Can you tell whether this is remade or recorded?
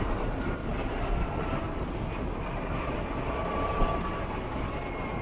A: recorded